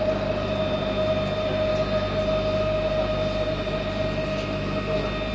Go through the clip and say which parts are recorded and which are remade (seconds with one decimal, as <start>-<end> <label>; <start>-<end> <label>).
0.0-5.3 recorded